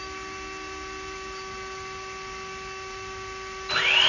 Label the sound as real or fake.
real